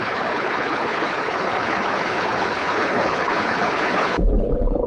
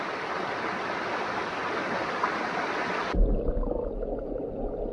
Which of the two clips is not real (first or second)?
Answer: first